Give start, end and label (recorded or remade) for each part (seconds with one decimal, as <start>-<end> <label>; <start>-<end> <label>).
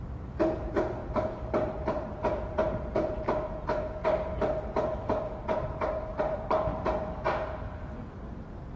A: 0.0-4.0 remade; 4.0-6.2 recorded; 6.2-6.7 remade; 6.7-8.8 recorded